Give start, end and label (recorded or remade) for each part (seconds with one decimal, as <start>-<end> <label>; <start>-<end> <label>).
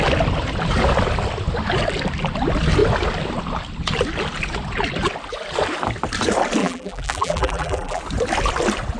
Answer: 0.0-6.6 recorded; 6.6-8.0 remade; 8.0-9.0 recorded